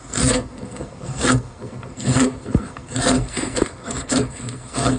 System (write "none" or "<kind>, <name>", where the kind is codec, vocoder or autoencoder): codec, SNAC